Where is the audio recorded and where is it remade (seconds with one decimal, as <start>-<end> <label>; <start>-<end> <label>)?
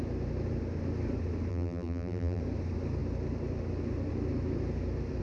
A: 0.0-1.5 recorded; 1.5-2.4 remade; 2.4-5.2 recorded